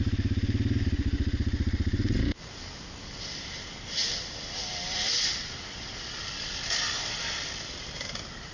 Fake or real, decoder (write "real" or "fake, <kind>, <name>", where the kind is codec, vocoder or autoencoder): real